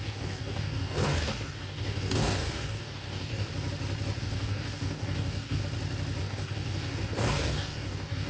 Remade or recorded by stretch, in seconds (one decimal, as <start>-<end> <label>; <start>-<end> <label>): 0.0-3.5 remade; 3.5-4.2 recorded; 4.2-5.6 remade; 5.6-6.2 recorded; 6.2-8.3 remade